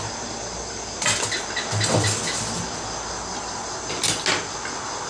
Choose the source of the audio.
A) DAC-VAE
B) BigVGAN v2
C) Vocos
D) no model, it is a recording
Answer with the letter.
D